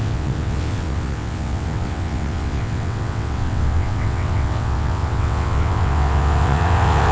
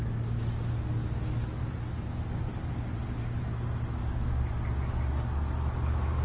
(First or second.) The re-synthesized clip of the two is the first